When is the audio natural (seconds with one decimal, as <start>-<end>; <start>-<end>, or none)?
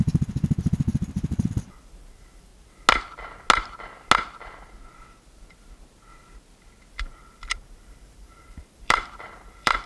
2.5-6.9